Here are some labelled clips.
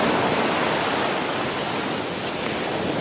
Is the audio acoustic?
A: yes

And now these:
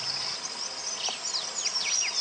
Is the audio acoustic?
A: yes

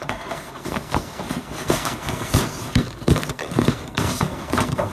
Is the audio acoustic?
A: no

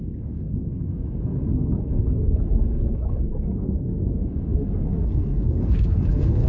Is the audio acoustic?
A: no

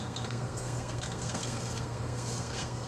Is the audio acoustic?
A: no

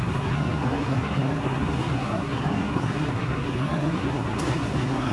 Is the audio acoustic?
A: no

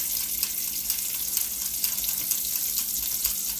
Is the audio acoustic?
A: yes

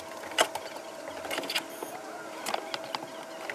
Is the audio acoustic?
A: yes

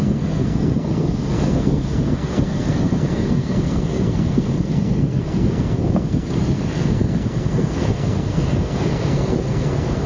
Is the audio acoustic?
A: no